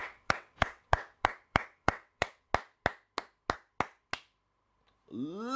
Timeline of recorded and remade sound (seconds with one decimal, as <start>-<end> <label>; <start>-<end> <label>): 0.0-2.5 remade; 2.5-5.6 recorded